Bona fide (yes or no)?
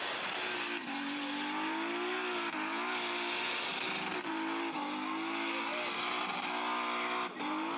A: yes